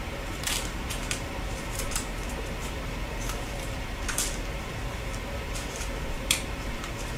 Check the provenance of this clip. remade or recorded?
remade